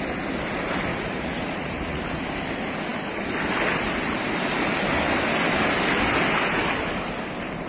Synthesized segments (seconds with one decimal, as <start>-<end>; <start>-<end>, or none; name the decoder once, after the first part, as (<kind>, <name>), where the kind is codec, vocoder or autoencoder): 0.9-2.0 (vocoder, Vocos)